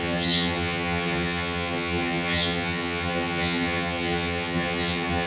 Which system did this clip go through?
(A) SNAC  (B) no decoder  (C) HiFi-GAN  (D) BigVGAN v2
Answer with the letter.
C